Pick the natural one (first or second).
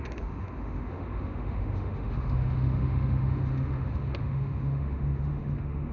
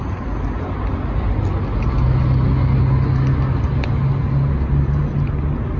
second